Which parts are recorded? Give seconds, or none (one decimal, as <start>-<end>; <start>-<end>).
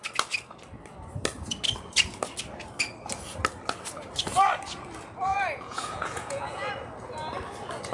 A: 0.0-5.3; 6.7-7.9